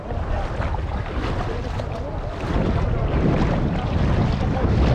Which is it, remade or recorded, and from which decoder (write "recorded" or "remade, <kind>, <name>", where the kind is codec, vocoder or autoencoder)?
recorded